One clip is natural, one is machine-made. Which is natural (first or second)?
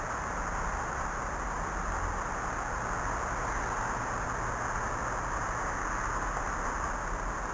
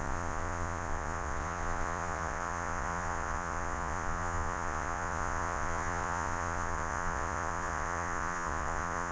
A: first